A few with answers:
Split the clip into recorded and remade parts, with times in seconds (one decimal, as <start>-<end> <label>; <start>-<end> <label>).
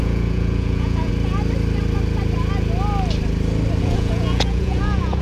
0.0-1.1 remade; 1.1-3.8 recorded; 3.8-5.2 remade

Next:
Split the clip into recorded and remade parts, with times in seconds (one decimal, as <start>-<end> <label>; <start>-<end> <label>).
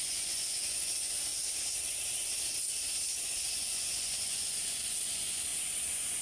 0.0-1.3 remade; 1.3-3.2 recorded; 3.2-6.2 remade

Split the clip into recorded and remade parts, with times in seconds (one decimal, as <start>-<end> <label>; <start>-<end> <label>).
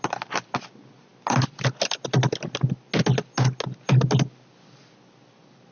0.0-5.7 recorded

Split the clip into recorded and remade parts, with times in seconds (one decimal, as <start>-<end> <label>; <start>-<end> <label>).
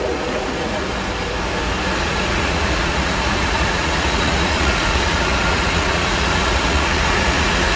0.0-0.9 remade; 0.9-2.0 recorded; 2.0-7.8 remade